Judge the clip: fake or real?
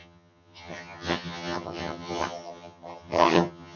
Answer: fake